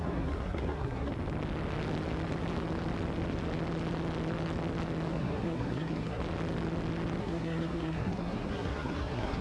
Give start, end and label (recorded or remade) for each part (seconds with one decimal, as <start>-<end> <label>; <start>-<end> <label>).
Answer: 0.0-1.1 remade; 1.1-5.1 recorded; 5.1-6.2 remade; 6.2-7.2 recorded; 7.2-9.4 remade